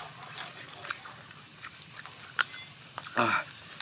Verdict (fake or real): real